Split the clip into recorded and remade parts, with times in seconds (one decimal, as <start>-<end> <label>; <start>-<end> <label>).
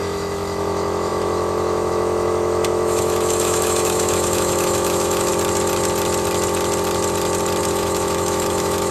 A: 0.0-5.3 remade; 5.3-7.6 recorded; 7.6-8.9 remade